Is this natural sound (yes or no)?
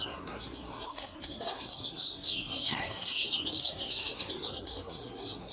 no